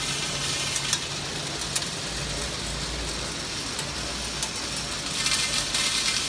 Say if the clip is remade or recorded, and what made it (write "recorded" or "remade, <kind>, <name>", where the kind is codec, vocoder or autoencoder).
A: recorded